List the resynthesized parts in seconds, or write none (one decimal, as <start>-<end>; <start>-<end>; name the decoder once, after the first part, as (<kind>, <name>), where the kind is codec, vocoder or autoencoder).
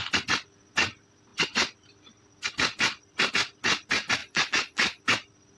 4.2-5.0 (vocoder, Vocos)